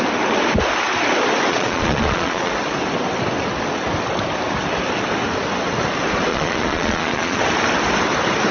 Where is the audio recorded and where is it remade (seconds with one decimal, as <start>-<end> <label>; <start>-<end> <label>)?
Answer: 0.0-1.5 recorded; 1.5-2.5 remade; 2.5-6.3 recorded; 6.3-7.4 remade; 7.4-8.5 recorded